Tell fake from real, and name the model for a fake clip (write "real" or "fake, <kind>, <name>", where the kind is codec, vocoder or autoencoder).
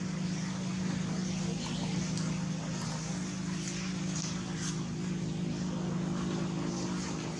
real